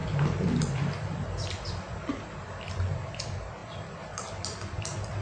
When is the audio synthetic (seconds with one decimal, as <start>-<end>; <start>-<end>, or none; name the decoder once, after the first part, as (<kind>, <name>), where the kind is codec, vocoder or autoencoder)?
0.0-3.1 (vocoder, BigVGAN v2)